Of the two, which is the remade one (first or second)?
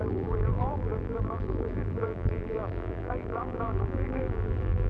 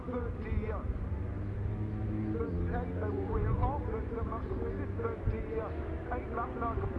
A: first